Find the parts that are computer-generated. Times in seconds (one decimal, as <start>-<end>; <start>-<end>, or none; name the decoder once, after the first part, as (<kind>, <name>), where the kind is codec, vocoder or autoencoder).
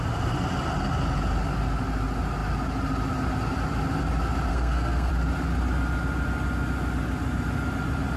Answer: 4.5-5.1 (codec, SNAC)